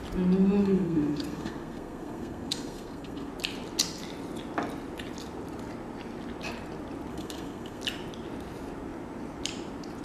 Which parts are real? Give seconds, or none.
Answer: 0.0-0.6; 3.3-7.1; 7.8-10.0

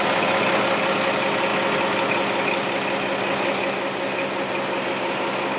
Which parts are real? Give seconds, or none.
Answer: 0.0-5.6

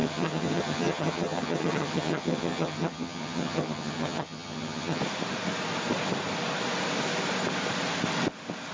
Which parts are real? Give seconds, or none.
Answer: 5.0-8.7

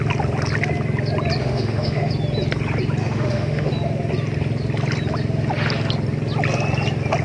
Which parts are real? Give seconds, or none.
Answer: 0.0-1.4; 2.1-3.0; 3.7-7.2